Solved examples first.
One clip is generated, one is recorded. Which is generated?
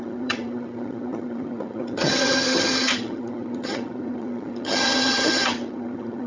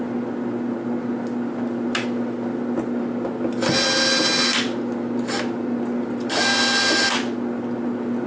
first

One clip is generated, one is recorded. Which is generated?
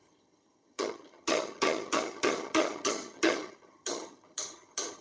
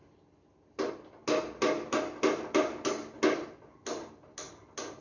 first